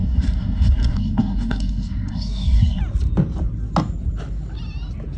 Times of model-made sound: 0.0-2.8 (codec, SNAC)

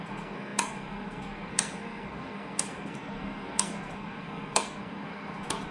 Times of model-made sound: 0.0-5.7 (codec, SNAC)